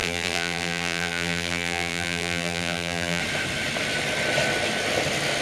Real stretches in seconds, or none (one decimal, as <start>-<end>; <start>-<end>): 3.2-5.4

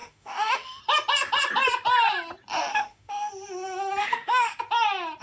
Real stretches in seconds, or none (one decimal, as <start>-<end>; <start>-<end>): 0.8-2.7; 3.3-4.0; 4.5-5.2

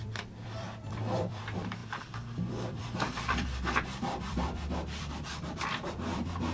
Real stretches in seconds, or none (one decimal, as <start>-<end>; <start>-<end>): none

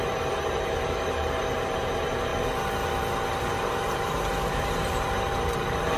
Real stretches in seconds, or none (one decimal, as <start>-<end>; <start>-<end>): 2.3-3.4

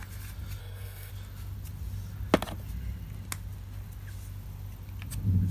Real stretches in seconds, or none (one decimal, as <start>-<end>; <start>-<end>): 0.0-0.6; 1.1-5.5